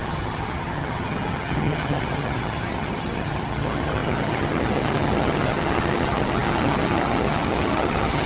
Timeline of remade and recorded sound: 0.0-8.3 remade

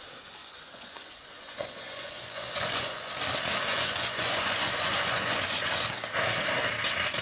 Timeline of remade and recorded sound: 0.0-0.4 recorded; 0.4-3.1 remade; 3.1-3.7 recorded; 3.7-5.7 remade; 5.7-7.2 recorded

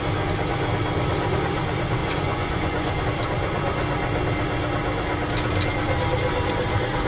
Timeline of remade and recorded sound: 0.0-2.0 recorded; 2.0-3.0 remade; 3.0-7.1 recorded

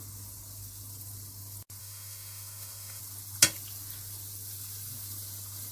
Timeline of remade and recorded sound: 0.0-1.8 recorded; 1.8-3.0 remade; 3.0-5.7 recorded